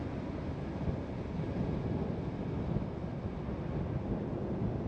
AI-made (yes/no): no